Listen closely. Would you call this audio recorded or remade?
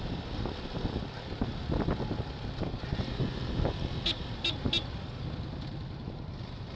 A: recorded